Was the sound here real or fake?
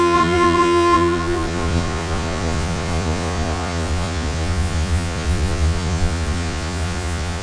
fake